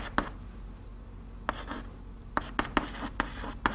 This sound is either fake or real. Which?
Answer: real